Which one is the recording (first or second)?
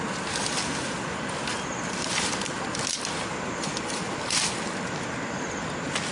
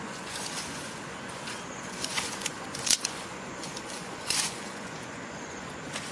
first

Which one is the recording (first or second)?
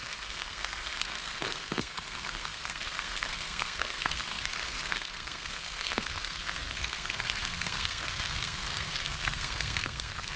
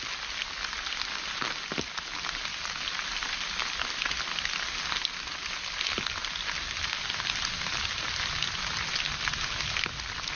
second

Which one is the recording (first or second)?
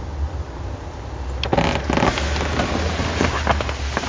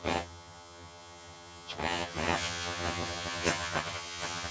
first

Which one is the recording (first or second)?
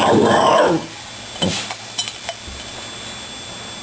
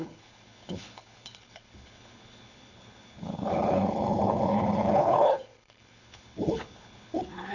first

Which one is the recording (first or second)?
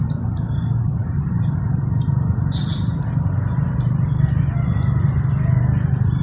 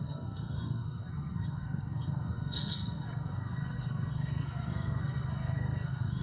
first